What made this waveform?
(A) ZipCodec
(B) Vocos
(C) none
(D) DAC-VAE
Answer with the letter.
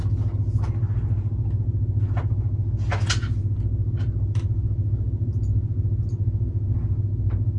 C